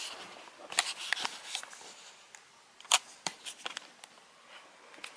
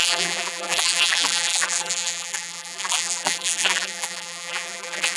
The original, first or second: first